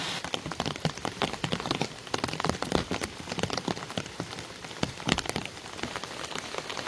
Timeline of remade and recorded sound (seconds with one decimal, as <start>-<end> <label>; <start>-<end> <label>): 0.0-6.9 recorded